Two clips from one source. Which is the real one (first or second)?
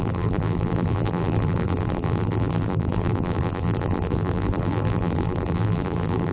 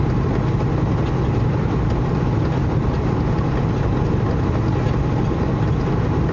second